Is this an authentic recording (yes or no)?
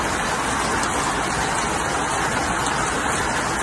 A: yes